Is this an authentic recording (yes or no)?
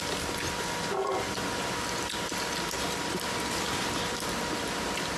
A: yes